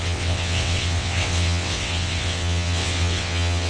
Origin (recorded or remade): remade